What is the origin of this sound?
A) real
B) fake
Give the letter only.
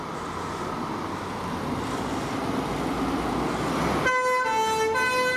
A